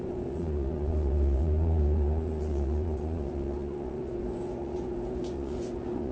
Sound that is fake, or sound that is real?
fake